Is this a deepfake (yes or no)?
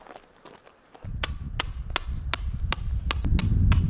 no